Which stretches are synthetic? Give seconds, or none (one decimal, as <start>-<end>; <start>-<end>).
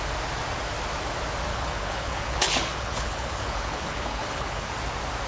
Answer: 1.5-4.7